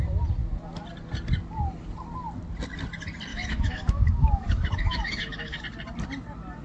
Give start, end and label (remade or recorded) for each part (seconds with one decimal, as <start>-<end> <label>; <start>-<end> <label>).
0.0-3.3 recorded; 3.3-5.6 remade; 5.6-6.6 recorded